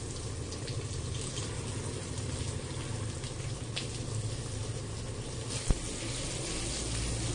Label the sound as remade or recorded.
recorded